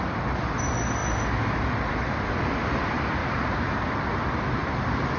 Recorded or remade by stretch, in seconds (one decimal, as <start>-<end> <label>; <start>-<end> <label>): 0.0-5.2 recorded